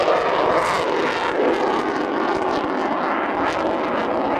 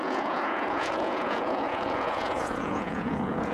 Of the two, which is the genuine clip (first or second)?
first